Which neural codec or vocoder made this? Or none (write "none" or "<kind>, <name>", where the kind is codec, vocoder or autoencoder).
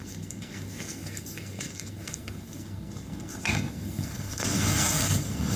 codec, SNAC